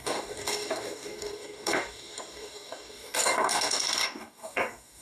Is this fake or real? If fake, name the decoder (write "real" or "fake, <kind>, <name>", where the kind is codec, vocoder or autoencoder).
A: fake, codec, DAC